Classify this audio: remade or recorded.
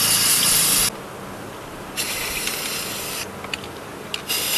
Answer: recorded